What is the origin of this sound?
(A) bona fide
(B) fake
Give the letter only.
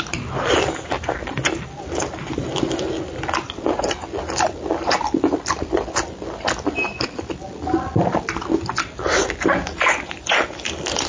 A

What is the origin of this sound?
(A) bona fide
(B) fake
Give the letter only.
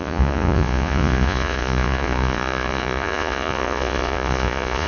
B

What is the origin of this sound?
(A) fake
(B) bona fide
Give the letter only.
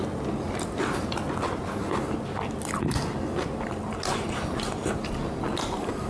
B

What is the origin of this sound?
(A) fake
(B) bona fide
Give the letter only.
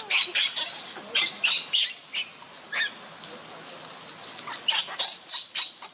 B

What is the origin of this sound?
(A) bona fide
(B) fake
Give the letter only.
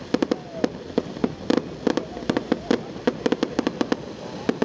A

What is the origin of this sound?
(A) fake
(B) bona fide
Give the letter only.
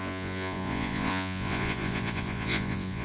A